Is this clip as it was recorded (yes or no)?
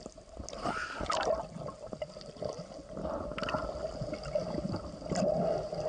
yes